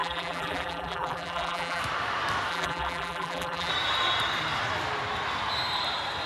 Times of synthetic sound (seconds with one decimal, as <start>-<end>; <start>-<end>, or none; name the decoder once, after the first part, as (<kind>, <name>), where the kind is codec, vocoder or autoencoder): 0.0-1.8 (vocoder, BigVGAN v2); 2.5-3.7